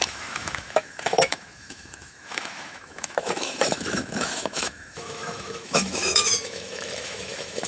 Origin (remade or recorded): remade